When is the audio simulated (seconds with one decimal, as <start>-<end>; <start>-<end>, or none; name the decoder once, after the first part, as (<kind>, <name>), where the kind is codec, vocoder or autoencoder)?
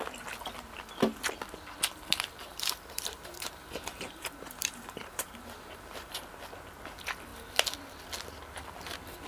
2.5-6.2 (vocoder, BigVGAN v2)